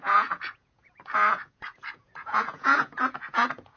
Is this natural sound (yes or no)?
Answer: no